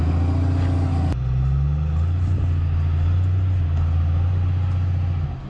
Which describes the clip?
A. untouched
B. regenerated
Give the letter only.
A